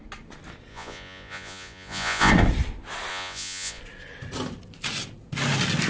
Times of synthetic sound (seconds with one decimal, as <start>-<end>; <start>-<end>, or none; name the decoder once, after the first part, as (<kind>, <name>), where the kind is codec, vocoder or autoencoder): 0.7-2.3 (vocoder, Vocos); 3.1-3.8